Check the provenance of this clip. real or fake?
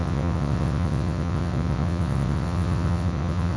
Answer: fake